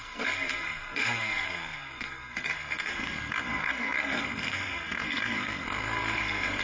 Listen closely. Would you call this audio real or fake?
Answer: fake